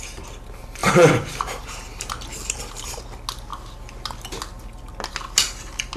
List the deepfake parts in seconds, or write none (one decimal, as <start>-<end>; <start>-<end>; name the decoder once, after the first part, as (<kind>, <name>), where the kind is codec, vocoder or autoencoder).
0.8-3.0 (vocoder, BigVGAN v2)